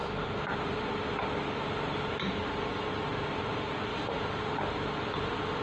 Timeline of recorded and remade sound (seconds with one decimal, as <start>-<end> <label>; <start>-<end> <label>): 0.0-0.6 remade; 0.6-3.9 recorded; 3.9-4.4 remade; 4.4-5.6 recorded